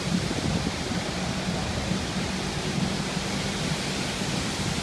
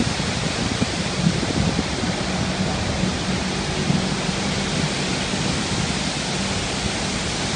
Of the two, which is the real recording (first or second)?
second